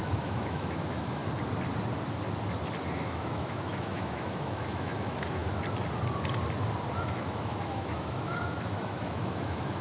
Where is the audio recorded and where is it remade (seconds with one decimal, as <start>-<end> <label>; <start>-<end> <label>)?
0.0-1.2 remade; 1.2-3.0 recorded; 3.0-5.4 remade; 5.4-7.0 recorded; 7.0-9.8 remade